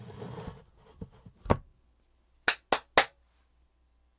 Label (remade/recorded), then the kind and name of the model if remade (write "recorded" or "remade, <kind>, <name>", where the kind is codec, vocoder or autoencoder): recorded